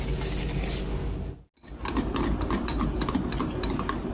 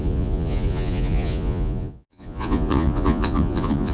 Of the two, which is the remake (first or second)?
second